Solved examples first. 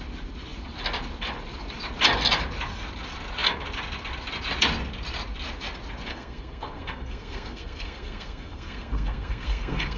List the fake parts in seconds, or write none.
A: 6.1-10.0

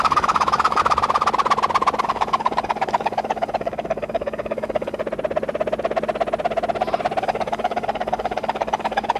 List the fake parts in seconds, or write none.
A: 0.0-0.8; 2.0-5.0; 7.2-9.2

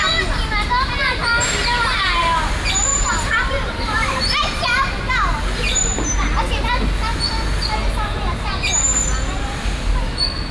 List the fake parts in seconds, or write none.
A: 2.9-4.2

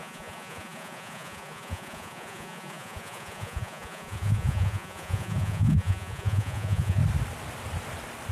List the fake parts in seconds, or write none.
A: 0.0-7.0